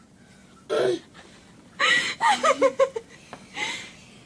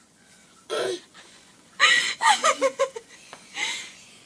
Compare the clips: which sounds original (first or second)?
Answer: first